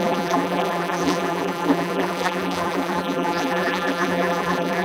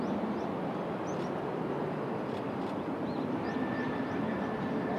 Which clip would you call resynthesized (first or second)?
first